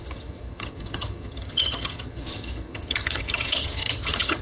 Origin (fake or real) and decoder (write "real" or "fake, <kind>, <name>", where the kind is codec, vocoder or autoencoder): fake, vocoder, HiFi-GAN